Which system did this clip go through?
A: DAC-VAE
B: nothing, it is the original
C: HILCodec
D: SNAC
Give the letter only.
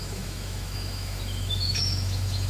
A